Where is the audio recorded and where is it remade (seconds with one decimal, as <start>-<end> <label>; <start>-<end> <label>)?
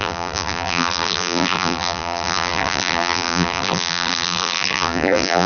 0.0-5.5 remade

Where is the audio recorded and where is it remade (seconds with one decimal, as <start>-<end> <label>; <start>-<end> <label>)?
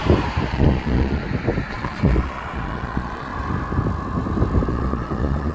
0.0-0.5 recorded; 0.5-1.2 remade; 1.2-1.7 recorded; 1.7-3.3 remade; 3.3-4.7 recorded; 4.7-5.5 remade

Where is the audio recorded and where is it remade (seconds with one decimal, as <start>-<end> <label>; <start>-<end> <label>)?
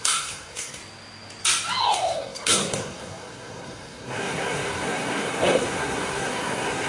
0.0-0.8 remade; 0.8-1.8 recorded; 1.8-6.9 remade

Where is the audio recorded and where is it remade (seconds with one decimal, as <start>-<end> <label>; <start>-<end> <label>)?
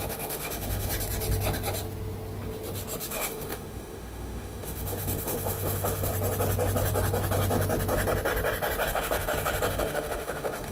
0.0-0.9 remade; 0.9-3.1 recorded; 3.1-6.1 remade; 6.1-8.9 recorded; 8.9-10.7 remade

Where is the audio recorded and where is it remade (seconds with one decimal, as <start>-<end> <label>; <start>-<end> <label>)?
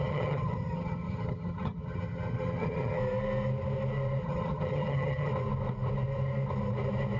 0.0-3.0 remade; 3.0-4.2 recorded; 4.2-5.3 remade; 5.3-7.2 recorded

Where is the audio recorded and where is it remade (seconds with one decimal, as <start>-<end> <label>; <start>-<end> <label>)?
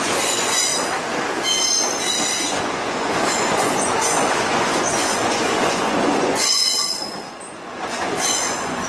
0.0-0.7 remade; 0.7-2.5 recorded; 2.5-8.9 remade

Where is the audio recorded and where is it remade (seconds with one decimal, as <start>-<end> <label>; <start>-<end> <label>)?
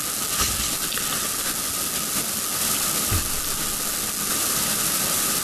0.0-2.6 recorded; 2.6-3.2 remade; 3.2-4.3 recorded; 4.3-5.4 remade